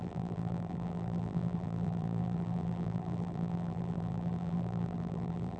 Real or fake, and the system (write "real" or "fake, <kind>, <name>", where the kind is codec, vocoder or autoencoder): fake, vocoder, BigVGAN v2